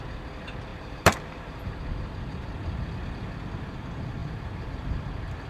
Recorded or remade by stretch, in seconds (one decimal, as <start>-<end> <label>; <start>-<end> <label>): 0.0-0.7 recorded; 0.7-1.7 remade; 1.7-4.2 recorded; 4.2-5.0 remade; 5.0-5.5 recorded